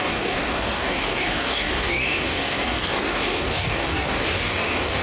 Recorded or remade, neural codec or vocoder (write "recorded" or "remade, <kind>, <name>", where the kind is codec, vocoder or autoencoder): remade, codec, DAC